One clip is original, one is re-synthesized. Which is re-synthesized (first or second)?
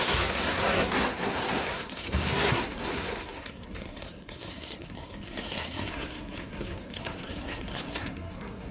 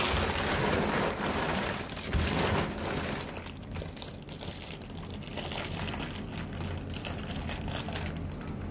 first